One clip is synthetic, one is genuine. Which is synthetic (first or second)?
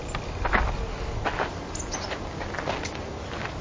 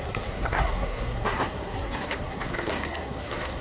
second